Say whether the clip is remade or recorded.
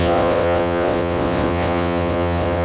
remade